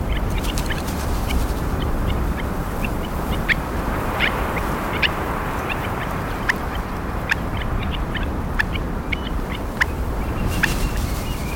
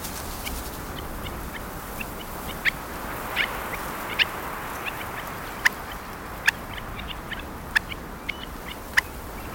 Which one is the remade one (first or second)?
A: first